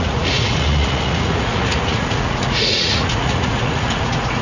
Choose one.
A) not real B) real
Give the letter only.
A